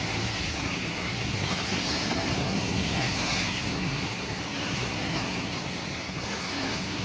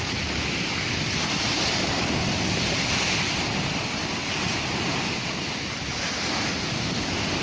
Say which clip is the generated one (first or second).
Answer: first